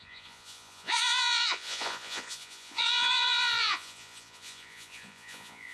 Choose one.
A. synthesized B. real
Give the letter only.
A